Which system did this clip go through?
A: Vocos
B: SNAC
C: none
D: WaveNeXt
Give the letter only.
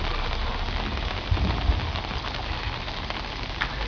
C